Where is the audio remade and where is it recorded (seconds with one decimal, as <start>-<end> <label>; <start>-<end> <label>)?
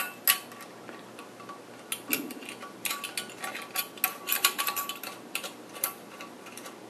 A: 0.0-4.1 recorded; 4.1-6.2 remade; 6.2-6.9 recorded